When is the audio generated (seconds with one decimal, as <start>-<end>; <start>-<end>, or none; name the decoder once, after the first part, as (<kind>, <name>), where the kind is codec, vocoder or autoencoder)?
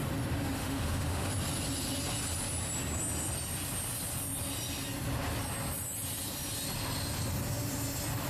0.6-1.3 (autoencoder, DAC-VAE)